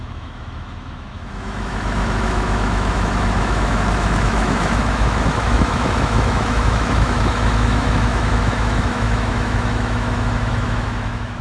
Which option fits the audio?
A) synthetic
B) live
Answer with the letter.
A